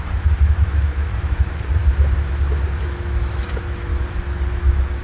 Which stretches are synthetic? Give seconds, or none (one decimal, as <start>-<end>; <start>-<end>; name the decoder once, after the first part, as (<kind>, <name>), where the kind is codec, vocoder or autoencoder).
0.0-1.8 (autoencoder, DAC-VAE); 2.8-3.9; 4.5-5.0